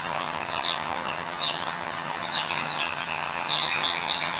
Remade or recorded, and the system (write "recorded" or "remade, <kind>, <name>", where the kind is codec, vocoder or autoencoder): remade, vocoder, HiFi-GAN